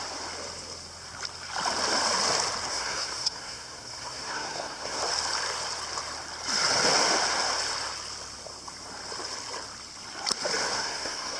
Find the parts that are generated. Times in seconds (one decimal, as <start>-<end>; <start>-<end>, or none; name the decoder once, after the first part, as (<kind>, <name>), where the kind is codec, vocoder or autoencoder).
2.7-5.0 (codec, SNAC); 10.7-11.4